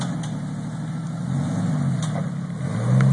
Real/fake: real